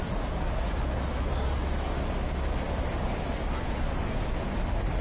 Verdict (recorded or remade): recorded